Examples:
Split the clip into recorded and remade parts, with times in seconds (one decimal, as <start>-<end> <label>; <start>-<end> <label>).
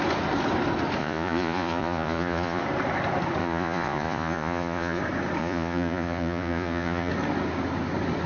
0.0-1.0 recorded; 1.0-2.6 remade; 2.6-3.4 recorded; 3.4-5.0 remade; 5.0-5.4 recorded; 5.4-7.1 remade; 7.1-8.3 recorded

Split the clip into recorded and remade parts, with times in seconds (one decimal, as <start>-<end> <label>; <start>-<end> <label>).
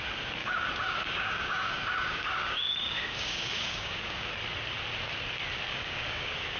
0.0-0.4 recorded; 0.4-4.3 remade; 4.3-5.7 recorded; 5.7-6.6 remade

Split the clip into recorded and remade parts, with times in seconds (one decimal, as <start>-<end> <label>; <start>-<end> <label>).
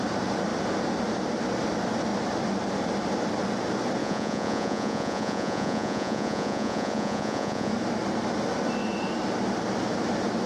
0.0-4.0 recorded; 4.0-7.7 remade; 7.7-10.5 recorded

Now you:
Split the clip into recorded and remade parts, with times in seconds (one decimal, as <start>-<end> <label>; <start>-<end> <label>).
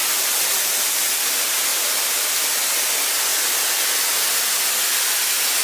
0.0-1.7 recorded; 1.7-2.3 remade; 2.3-5.6 recorded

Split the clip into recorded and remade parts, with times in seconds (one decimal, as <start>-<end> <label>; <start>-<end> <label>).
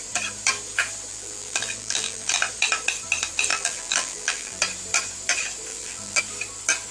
0.0-1.1 recorded; 1.1-2.4 remade; 2.4-3.5 recorded; 3.5-4.6 remade; 4.6-5.7 recorded; 5.7-6.2 remade; 6.2-6.9 recorded